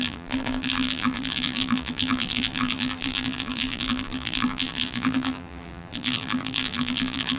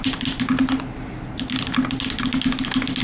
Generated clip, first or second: first